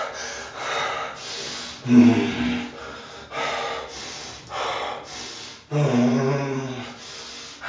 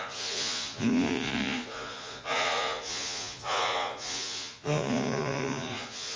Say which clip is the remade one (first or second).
second